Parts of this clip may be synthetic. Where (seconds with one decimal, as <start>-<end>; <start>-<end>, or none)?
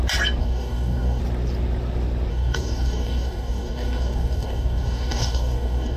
0.4-1.2; 2.3-6.0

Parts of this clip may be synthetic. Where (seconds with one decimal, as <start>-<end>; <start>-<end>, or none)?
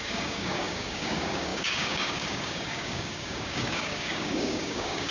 0.0-5.1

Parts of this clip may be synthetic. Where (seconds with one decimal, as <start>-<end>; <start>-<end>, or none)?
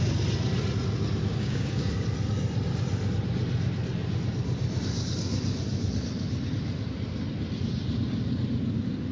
1.3-1.9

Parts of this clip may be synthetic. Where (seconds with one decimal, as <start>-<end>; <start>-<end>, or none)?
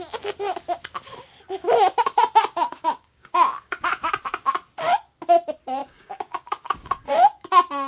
2.4-4.1; 5.8-7.0